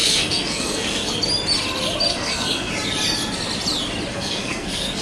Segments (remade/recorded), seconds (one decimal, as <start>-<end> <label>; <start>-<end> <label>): 0.0-1.1 remade; 1.1-2.1 recorded; 2.1-2.7 remade; 2.7-4.1 recorded; 4.1-5.0 remade